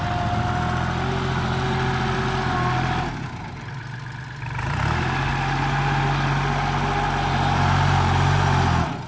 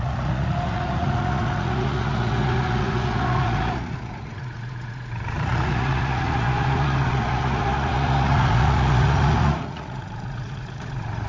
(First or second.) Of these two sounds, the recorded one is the first